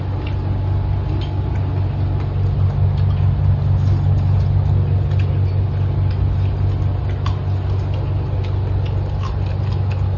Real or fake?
real